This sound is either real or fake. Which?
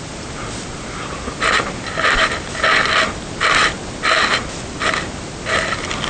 real